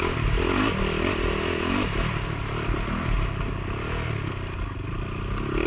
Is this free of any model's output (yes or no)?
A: yes